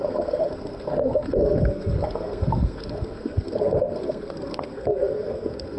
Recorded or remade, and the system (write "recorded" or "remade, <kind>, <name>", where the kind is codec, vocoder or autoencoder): remade, codec, SNAC